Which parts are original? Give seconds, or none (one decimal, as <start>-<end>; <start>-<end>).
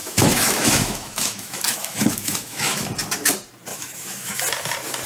2.9-3.7; 4.4-5.1